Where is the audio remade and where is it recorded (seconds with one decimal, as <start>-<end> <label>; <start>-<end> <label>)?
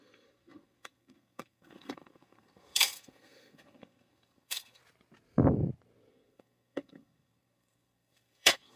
0.0-4.8 remade; 4.8-6.1 recorded; 6.1-8.8 remade